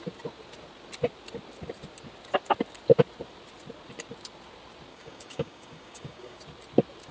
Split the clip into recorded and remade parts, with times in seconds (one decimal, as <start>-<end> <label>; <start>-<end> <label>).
0.0-4.9 recorded; 4.9-6.4 remade; 6.4-7.1 recorded